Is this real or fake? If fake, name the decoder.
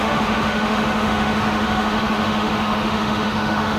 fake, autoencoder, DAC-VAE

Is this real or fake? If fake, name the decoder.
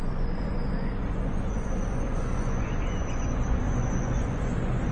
fake, vocoder, Vocos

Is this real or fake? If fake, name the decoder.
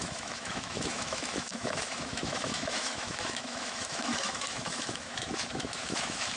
fake, autoencoder, DAC-VAE